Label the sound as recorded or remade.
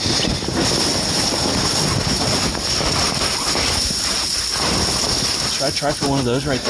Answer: recorded